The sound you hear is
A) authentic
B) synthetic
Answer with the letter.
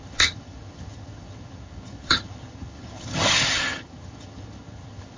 B